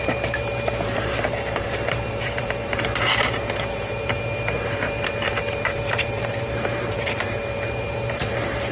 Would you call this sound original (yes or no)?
no